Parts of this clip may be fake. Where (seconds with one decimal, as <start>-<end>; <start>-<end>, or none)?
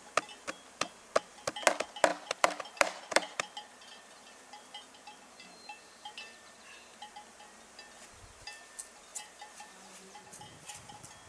2.1-7.1; 9.1-10.9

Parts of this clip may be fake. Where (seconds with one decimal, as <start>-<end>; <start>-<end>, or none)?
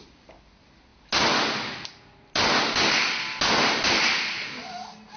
none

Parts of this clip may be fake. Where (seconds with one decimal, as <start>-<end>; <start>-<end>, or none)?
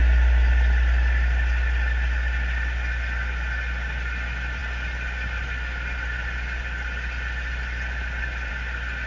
none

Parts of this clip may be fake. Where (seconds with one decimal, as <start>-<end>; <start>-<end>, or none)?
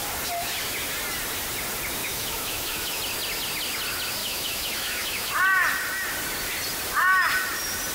2.0-3.0; 4.2-5.3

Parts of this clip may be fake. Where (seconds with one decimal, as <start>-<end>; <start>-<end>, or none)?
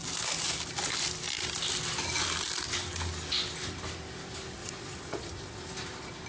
4.6-5.6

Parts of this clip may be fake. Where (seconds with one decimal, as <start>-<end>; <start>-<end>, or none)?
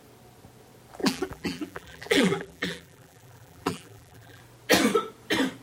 1.0-4.4